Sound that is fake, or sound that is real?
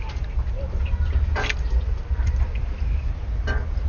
real